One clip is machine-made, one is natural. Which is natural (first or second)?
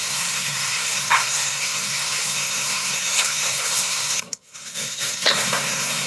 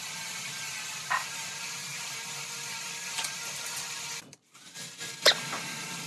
second